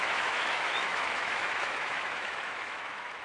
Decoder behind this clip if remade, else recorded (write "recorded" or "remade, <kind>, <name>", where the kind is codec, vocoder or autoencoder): remade, autoencoder, DAC-VAE